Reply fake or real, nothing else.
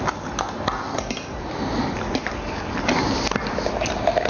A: real